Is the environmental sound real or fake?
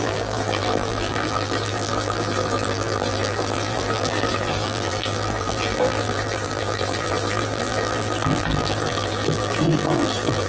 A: fake